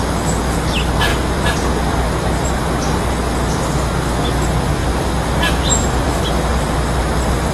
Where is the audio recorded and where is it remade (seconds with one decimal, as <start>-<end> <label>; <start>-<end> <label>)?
0.0-1.1 recorded; 1.1-2.5 remade; 2.5-4.8 recorded; 4.8-6.1 remade; 6.1-6.5 recorded; 6.5-7.0 remade; 7.0-7.5 recorded